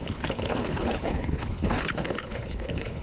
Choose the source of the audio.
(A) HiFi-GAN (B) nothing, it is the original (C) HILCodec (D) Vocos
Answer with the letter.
C